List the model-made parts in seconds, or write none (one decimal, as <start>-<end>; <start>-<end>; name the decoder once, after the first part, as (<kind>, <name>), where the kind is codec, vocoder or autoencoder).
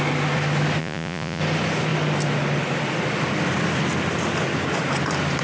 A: 0.8-1.4 (vocoder, Vocos)